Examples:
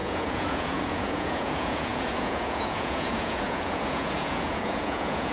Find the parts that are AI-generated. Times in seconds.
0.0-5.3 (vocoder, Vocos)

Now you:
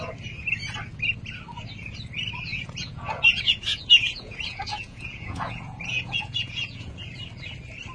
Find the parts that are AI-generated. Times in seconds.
2.5-7.1 (vocoder, Vocos)

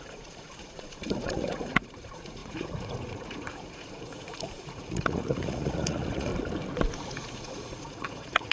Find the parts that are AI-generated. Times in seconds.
0.0-6.3 (vocoder, Vocos); 7.1-8.5